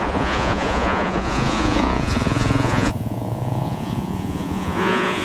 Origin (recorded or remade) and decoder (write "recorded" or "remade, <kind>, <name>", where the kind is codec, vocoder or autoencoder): remade, vocoder, Vocos